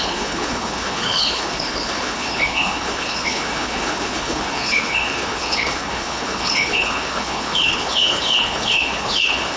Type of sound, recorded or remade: remade